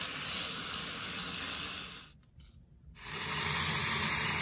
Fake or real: real